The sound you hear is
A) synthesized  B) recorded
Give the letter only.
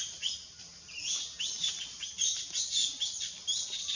B